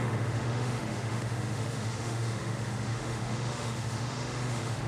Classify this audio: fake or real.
fake